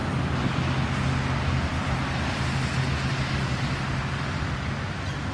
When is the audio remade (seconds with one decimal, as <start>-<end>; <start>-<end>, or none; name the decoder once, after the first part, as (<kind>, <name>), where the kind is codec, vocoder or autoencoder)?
none